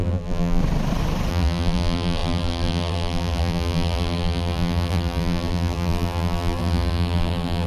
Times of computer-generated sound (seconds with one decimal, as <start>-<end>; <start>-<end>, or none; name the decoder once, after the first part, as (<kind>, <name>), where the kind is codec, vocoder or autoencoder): 0.0-0.6 (vocoder, BigVGAN v2); 1.3-7.7